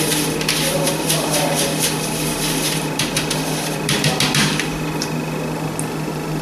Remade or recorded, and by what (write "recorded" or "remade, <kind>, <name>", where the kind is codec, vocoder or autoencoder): recorded